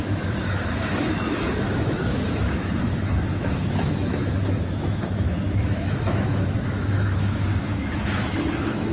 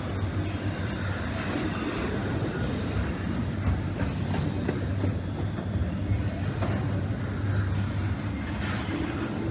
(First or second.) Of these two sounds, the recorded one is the second